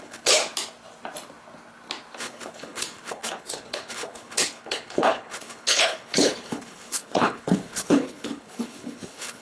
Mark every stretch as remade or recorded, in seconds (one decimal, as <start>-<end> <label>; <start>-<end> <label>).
0.0-0.4 remade; 0.4-2.2 recorded; 2.2-9.4 remade